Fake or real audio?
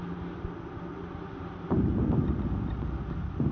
real